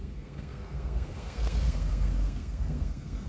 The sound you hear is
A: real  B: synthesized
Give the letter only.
B